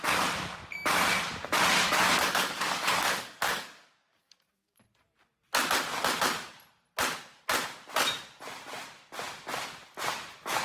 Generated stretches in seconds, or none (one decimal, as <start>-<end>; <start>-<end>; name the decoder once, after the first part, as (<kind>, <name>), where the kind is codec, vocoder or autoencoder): 1.8-4.8 (codec, DAC)